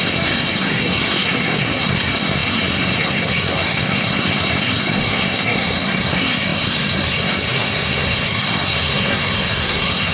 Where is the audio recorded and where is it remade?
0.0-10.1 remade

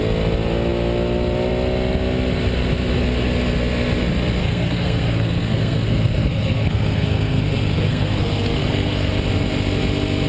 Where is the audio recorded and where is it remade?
0.0-4.4 recorded; 4.4-9.1 remade; 9.1-10.3 recorded